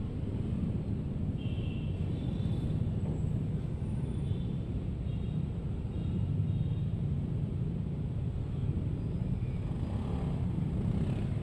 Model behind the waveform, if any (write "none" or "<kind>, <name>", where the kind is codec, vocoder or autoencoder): none